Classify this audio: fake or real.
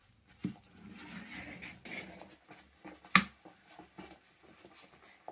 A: real